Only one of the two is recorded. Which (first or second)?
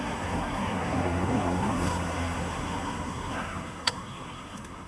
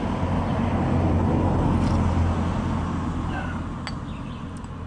second